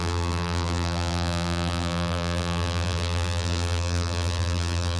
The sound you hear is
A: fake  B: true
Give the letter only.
A